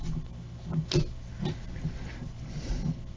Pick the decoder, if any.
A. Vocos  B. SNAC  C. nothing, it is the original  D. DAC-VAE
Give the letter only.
C